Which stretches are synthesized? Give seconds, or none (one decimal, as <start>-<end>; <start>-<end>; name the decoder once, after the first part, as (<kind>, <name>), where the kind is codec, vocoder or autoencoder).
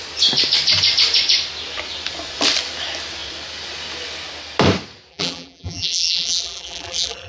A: 5.1-7.3 (vocoder, BigVGAN v2)